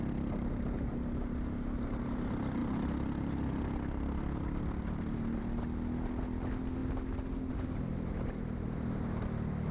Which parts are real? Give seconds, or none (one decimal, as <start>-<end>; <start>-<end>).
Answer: 0.0-9.7